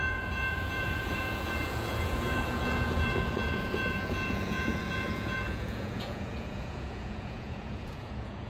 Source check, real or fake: fake